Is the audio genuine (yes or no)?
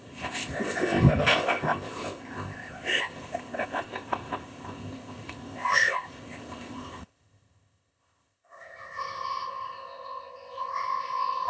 no